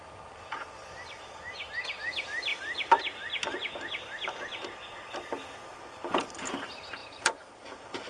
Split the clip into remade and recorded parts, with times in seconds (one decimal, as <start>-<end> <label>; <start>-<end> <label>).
0.0-2.5 recorded; 2.5-3.0 remade; 3.0-7.0 recorded; 7.0-8.1 remade